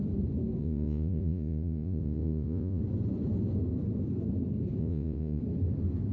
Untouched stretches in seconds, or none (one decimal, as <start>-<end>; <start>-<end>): 0.0-0.6; 2.8-4.8; 5.4-6.1